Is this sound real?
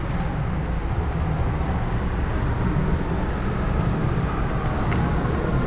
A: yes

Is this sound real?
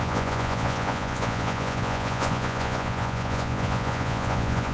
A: no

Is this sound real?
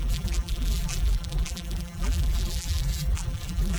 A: no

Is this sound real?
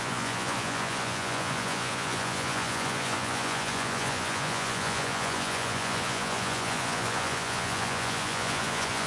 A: no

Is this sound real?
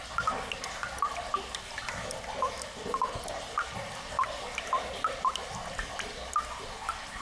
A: yes